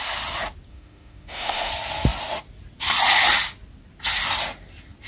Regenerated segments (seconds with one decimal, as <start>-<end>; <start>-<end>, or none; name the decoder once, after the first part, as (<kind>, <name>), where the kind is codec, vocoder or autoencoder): 0.7-1.7 (autoencoder, DAC-VAE)